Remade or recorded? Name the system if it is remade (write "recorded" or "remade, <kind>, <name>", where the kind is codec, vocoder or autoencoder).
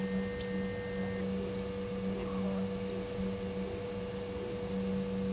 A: recorded